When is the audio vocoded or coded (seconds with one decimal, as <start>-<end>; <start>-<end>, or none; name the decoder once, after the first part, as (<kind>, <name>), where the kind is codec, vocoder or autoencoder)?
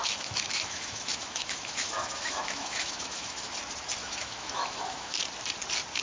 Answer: 0.0-3.6 (autoencoder, DAC-VAE); 4.0-5.2